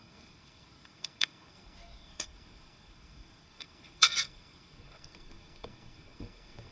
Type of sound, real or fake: fake